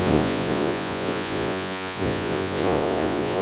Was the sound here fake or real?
fake